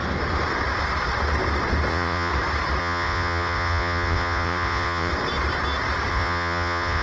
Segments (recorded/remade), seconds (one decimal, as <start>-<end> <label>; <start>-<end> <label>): 0.0-1.9 recorded; 1.9-2.3 remade; 2.3-2.8 recorded; 2.8-5.1 remade; 5.1-6.1 recorded; 6.1-7.0 remade